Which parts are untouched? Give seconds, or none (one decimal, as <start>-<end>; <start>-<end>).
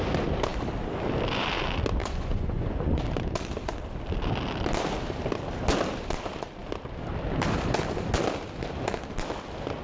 0.0-2.0; 3.0-9.8